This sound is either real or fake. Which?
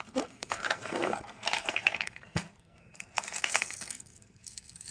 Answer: fake